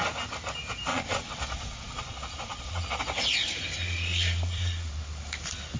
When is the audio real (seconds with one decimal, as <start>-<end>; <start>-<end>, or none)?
0.0-0.9; 3.0-3.8; 4.9-5.8